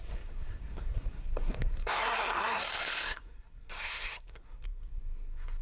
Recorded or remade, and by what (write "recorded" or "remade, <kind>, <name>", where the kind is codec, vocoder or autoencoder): remade, codec, SNAC